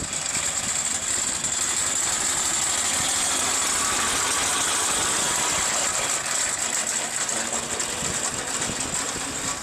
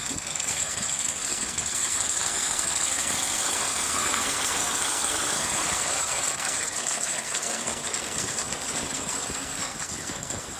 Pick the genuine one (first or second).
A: first